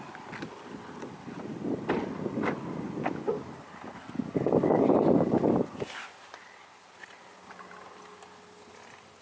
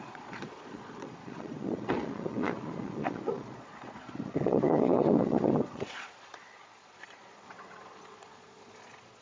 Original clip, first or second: first